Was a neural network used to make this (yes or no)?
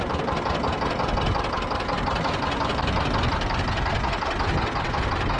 no